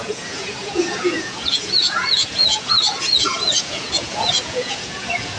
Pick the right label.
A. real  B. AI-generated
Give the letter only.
B